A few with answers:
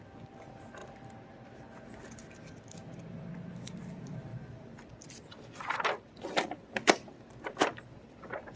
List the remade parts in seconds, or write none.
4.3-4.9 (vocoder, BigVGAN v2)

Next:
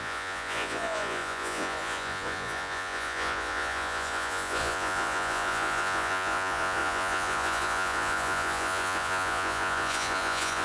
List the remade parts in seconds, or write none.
0.0-10.6 (vocoder, Vocos)

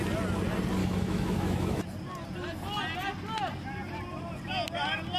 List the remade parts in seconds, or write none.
0.8-1.8 (autoencoder, DAC-VAE)

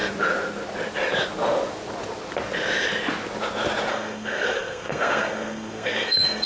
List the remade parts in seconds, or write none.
3.9-6.5 (codec, SNAC)

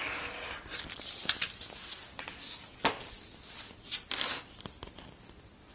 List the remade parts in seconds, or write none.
none

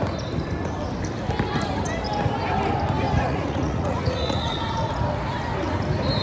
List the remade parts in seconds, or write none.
3.2-4.9 (vocoder, Vocos)

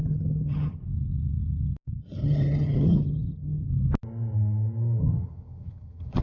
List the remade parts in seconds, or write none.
0.0-0.8 (vocoder, HiFi-GAN); 2.2-3.7; 5.0-6.2

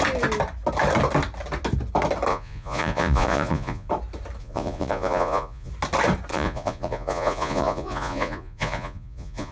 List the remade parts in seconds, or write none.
2.3-3.9 (vocoder, Vocos); 4.4-5.7; 6.3-9.5